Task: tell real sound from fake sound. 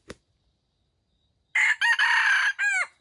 real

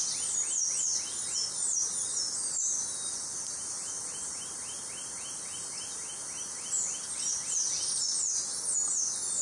real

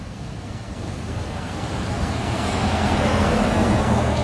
fake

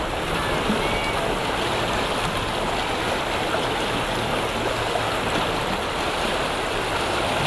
real